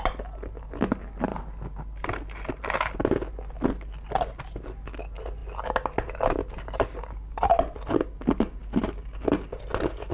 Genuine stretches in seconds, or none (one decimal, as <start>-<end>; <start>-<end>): 0.0-10.1